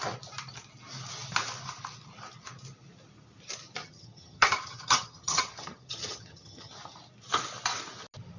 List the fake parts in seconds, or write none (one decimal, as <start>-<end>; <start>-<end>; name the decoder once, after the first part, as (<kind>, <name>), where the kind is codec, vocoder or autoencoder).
3.8-6.7 (vocoder, HiFi-GAN)